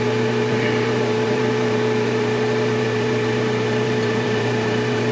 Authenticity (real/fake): fake